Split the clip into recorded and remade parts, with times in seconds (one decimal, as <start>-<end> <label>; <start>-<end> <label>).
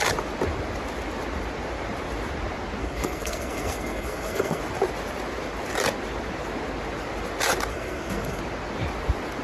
0.0-2.8 recorded; 2.8-4.6 remade; 4.6-7.7 recorded; 7.7-8.4 remade; 8.4-9.4 recorded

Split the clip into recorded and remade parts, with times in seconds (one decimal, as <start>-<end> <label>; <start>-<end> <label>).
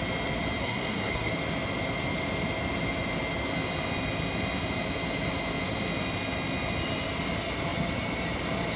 0.0-0.6 recorded; 0.6-1.3 remade; 1.3-8.8 recorded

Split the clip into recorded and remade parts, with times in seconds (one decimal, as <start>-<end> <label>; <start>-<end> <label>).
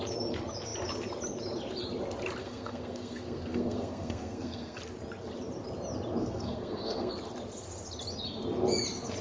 0.0-2.4 recorded; 2.4-4.8 remade; 4.8-6.2 recorded; 6.2-7.1 remade; 7.1-9.2 recorded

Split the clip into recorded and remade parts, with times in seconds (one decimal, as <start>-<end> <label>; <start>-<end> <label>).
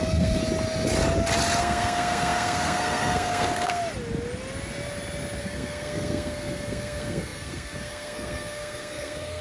0.0-0.4 remade; 0.4-1.6 recorded; 1.6-3.8 remade; 3.8-5.4 recorded; 5.4-9.4 remade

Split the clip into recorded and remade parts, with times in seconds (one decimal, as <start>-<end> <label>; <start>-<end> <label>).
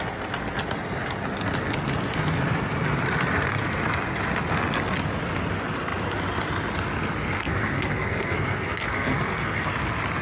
0.0-7.4 recorded; 7.4-9.7 remade; 9.7-10.2 recorded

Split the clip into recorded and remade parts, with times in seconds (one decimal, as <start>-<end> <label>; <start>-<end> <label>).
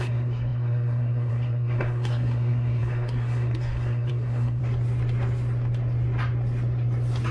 0.0-4.6 remade; 4.6-7.3 recorded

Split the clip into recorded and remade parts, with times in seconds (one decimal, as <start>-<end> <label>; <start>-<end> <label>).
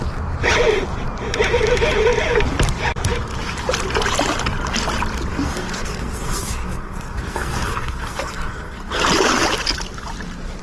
0.0-5.3 recorded; 5.3-9.0 remade; 9.0-10.6 recorded